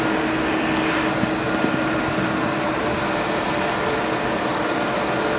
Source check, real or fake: real